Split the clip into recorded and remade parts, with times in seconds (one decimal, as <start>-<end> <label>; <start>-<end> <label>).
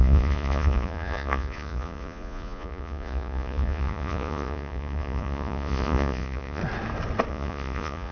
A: 0.0-6.6 remade; 6.6-7.3 recorded; 7.3-8.1 remade